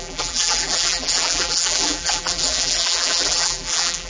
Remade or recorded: remade